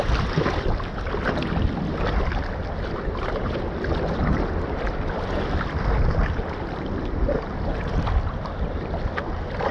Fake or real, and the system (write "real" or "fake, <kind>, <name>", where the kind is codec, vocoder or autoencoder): real